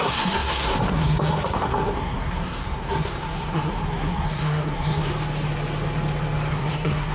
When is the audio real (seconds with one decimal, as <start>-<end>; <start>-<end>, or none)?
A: 5.1-6.5